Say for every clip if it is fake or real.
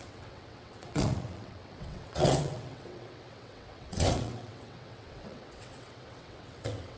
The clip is fake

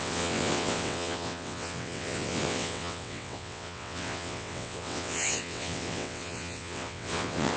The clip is fake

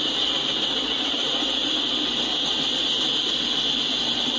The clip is real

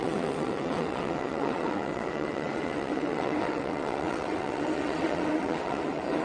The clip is fake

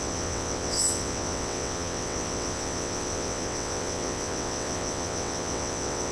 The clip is fake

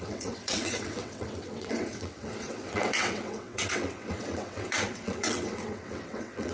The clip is fake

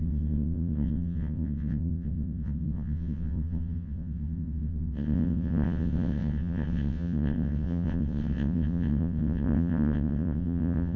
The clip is fake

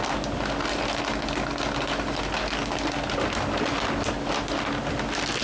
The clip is real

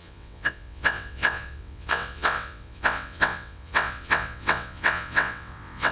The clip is fake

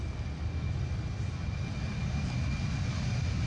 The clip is real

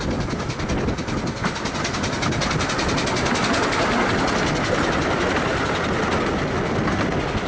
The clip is real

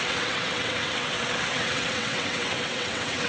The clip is fake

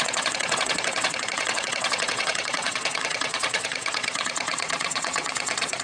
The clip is fake